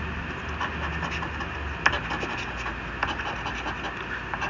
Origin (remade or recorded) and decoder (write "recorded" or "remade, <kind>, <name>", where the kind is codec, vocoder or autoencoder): recorded